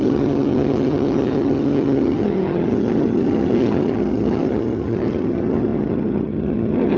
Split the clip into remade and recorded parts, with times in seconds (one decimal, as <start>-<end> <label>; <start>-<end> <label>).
0.0-7.0 remade